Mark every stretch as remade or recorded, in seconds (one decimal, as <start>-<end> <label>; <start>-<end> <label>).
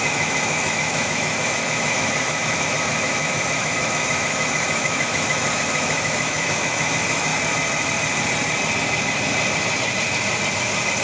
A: 0.0-7.3 remade; 7.3-11.0 recorded